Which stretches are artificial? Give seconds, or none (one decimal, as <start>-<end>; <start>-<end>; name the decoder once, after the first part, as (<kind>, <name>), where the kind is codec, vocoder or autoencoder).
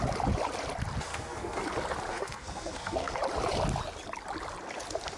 1.1-1.6 (codec, SNAC); 2.1-3.1